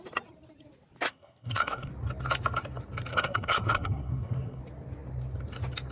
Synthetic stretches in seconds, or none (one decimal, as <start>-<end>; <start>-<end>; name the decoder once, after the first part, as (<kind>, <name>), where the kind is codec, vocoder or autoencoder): 1.1-1.9 (codec, SNAC); 3.1-4.6